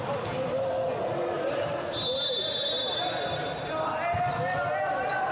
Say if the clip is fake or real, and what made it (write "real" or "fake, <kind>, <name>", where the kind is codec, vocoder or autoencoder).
real